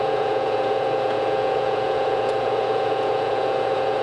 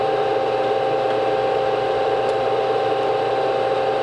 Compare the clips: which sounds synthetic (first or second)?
first